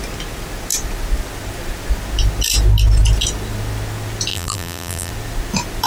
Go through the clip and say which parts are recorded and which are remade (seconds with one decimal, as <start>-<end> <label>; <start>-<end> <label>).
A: 0.0-4.3 recorded; 4.3-5.1 remade; 5.1-5.9 recorded